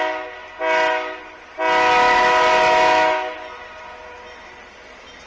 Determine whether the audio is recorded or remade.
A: recorded